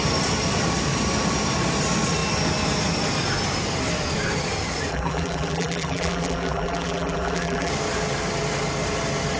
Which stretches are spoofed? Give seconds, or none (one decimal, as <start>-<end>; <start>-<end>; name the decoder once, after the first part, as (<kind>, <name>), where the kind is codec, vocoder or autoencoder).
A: 4.9-7.7 (vocoder, BigVGAN v2)